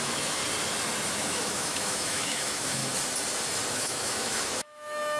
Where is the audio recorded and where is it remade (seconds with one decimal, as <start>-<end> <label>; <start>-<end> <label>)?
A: 0.0-0.4 remade; 0.4-1.1 recorded; 1.1-2.8 remade; 2.8-3.7 recorded; 3.7-5.2 remade